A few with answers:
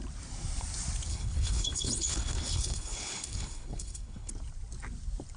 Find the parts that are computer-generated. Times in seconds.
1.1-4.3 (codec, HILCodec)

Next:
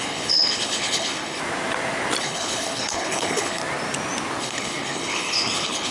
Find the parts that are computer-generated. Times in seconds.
0.0-1.4 (codec, HILCodec); 2.2-3.6; 4.4-5.9

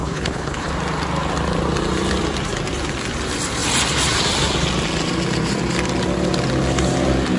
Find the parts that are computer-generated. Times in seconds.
0.0-0.7 (codec, HILCodec)

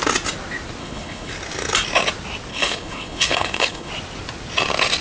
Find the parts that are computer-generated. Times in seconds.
0.8-1.3 (codec, HILCodec); 2.5-3.9

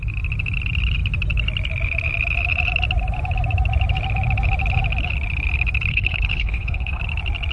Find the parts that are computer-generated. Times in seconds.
5.9-7.0 (codec, HILCodec)

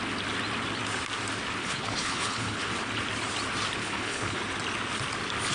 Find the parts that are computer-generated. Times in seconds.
1.6-2.7 (codec, HILCodec); 3.8-4.4

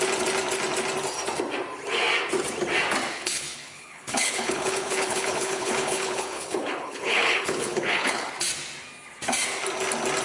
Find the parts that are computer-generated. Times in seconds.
3.1-8.3 (codec, HILCodec)

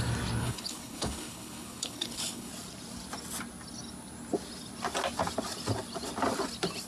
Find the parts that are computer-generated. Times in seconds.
0.4-2.5 (codec, HILCodec)